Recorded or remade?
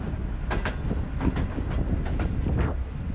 recorded